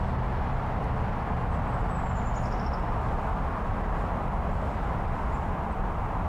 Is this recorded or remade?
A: recorded